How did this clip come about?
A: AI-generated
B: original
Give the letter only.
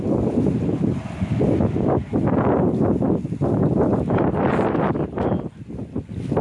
B